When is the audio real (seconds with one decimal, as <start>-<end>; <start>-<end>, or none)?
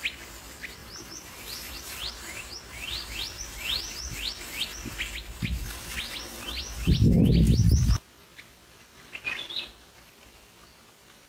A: 0.0-0.8; 4.1-11.3